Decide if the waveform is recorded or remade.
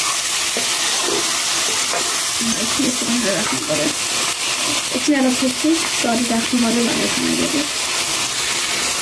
recorded